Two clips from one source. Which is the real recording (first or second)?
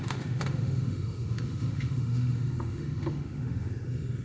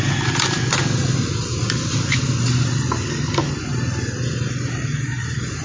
second